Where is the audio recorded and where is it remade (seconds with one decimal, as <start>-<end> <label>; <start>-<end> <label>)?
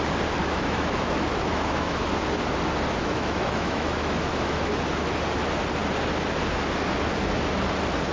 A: 0.0-0.4 recorded; 0.4-2.1 remade; 2.1-3.0 recorded; 3.0-4.7 remade; 4.7-8.1 recorded